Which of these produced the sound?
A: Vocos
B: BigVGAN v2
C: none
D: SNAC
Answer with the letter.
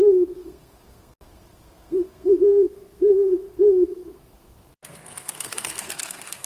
D